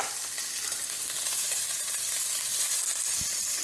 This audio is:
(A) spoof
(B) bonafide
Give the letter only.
B